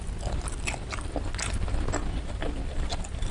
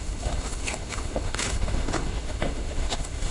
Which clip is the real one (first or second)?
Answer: first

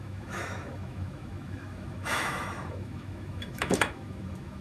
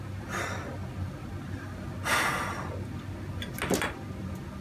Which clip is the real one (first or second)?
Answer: second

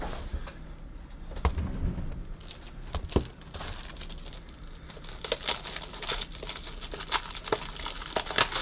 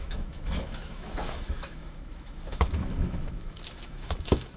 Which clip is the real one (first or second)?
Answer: first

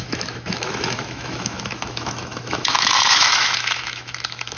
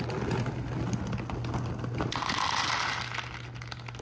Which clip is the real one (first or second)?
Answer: second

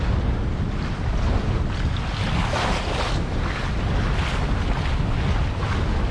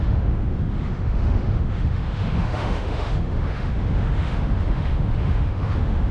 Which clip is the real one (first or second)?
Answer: first